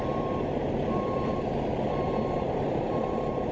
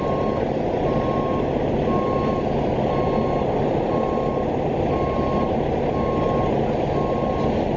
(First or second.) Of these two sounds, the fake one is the first